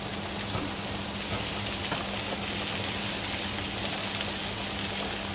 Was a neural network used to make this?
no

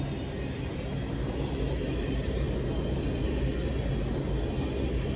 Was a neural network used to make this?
no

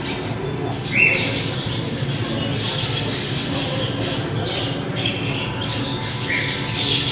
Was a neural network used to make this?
no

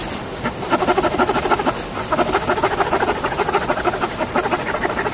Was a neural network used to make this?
no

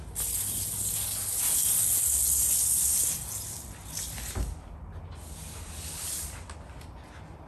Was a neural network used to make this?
no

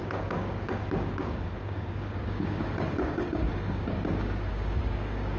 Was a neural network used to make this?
yes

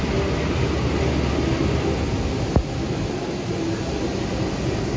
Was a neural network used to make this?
no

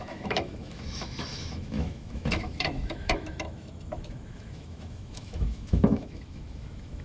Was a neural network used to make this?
yes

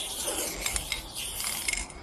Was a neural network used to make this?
no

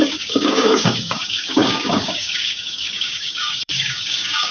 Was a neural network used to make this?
yes